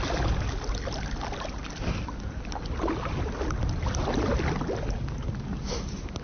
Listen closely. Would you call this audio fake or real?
real